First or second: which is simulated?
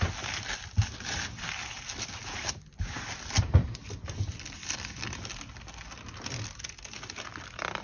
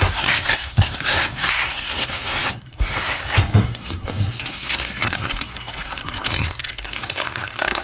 second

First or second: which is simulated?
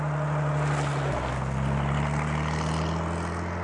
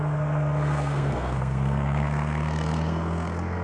second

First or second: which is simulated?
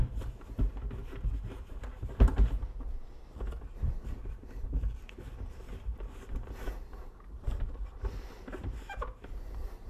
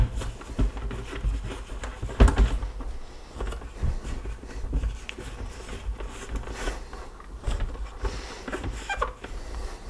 first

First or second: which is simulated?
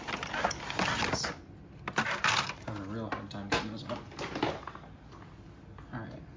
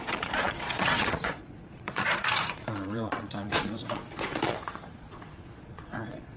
second